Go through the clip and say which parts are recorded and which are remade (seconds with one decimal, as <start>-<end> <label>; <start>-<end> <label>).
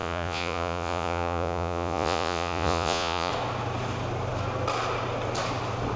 0.0-3.3 remade; 3.3-6.0 recorded